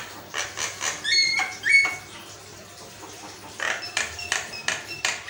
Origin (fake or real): real